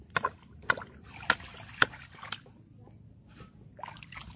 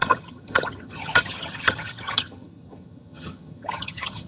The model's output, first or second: second